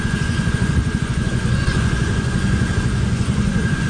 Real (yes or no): no